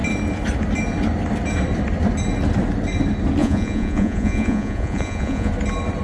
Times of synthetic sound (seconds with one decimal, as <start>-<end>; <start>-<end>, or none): 3.4-5.5

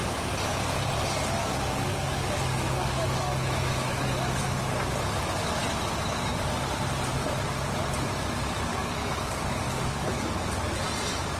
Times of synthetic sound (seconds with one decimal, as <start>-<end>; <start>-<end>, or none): 1.4-4.5; 8.7-10.5

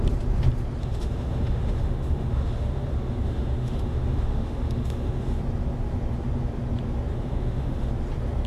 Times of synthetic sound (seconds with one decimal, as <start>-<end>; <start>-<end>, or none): 0.8-5.4; 7.1-7.9

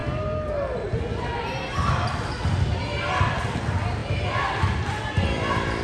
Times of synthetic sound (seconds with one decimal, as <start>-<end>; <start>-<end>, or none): none

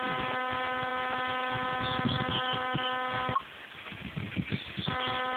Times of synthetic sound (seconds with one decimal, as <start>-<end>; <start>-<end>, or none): none

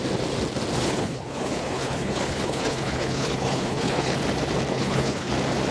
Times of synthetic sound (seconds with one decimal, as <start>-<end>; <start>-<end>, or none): 0.8-4.2; 4.7-5.3

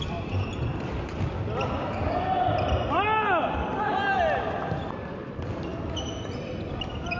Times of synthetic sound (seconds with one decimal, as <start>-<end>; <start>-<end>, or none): none

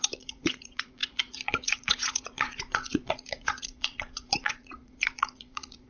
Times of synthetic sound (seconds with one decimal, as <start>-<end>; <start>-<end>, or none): 0.0-5.9